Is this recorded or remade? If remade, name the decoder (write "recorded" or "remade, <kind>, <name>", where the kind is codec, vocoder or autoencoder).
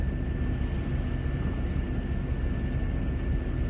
recorded